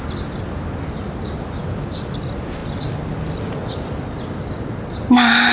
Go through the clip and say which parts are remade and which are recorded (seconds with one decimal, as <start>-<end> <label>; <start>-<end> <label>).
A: 0.0-5.5 recorded

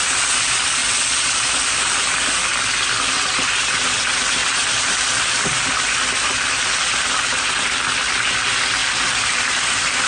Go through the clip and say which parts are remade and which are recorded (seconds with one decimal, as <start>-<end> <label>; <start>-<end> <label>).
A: 0.0-4.4 recorded; 4.4-8.1 remade; 8.1-8.8 recorded; 8.8-10.1 remade